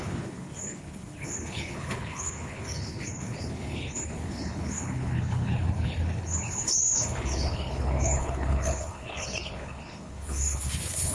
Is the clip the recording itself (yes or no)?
no